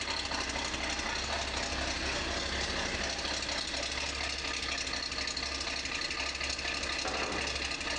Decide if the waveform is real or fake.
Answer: real